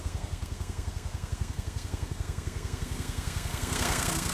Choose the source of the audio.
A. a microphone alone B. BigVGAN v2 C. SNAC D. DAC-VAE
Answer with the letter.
C